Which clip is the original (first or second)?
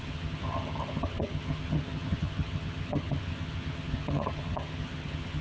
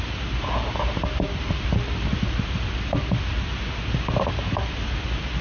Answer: second